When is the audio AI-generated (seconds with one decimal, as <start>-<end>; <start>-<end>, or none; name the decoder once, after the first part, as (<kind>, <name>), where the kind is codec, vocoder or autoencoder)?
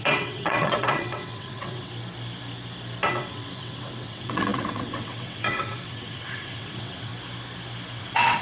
0.0-1.9 (vocoder, WaveNeXt); 3.1-7.1; 8.0-8.4